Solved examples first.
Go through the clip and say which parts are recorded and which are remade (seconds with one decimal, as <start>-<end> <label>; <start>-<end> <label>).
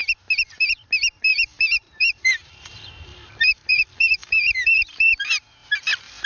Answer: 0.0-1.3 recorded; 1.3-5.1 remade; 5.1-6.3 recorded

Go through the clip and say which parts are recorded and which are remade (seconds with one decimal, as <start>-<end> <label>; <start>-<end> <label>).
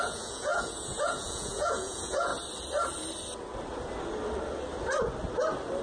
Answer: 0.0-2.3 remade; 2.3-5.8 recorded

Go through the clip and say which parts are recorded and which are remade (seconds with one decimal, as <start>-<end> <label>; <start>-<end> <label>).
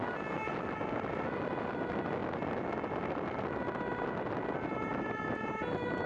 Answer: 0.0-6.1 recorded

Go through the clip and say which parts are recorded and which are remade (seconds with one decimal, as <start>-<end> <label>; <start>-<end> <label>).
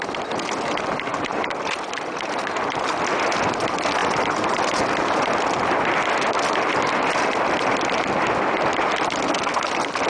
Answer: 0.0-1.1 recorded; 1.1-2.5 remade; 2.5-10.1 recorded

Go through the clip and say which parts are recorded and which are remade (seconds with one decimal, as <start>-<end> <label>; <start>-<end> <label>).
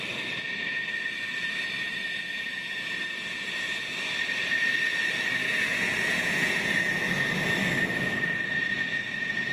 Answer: 0.0-2.5 recorded; 2.5-3.9 remade; 3.9-5.4 recorded; 5.4-6.5 remade; 6.5-9.5 recorded